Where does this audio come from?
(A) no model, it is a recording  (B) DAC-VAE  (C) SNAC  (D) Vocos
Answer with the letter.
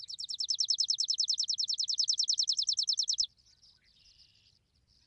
A